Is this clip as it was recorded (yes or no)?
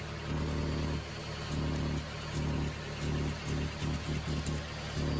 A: yes